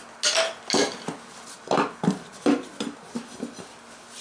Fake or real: real